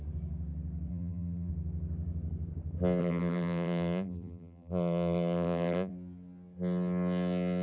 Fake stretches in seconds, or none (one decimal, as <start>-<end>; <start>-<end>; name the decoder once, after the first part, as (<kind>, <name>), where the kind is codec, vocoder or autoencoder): 0.9-1.5 (vocoder, BigVGAN v2); 3.0-5.9